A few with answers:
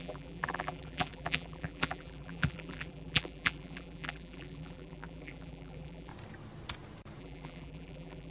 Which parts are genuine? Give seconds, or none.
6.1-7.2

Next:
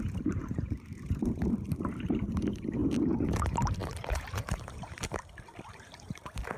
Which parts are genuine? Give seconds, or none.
2.8-3.4

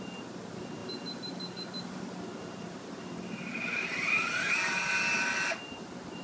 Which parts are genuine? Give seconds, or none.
0.0-0.8; 4.5-6.2

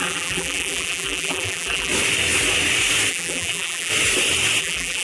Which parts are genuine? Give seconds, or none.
1.9-3.1; 3.9-4.6

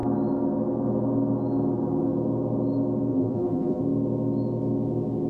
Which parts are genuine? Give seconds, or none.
0.0-3.1; 3.8-5.3

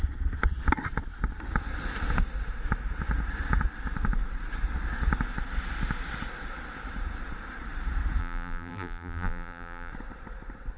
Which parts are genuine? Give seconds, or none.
0.0-8.2; 9.9-10.8